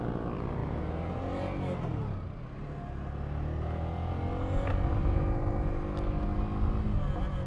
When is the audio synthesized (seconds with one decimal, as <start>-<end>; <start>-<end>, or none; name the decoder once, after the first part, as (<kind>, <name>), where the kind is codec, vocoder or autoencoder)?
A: none